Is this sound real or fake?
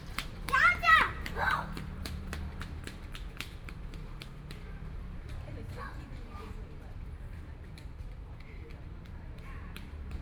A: fake